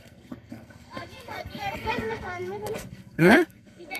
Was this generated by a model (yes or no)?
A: yes